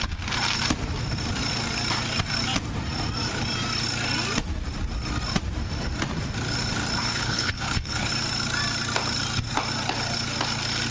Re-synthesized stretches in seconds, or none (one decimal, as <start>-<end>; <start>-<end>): 7.0-8.1